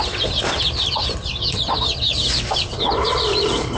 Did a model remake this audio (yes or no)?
yes